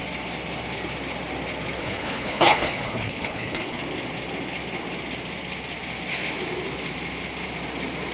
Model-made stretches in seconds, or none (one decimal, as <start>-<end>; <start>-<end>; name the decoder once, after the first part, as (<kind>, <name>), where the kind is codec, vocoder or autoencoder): 1.8-3.8 (codec, HILCodec)